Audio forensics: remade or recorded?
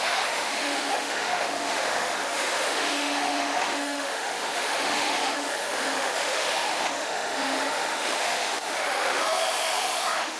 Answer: remade